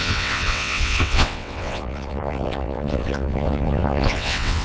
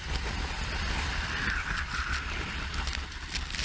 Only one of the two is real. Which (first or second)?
second